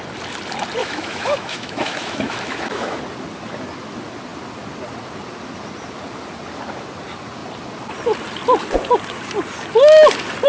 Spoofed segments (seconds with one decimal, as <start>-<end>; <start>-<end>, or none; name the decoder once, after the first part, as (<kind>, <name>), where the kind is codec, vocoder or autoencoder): 0.8-3.0 (autoencoder, DAC-VAE)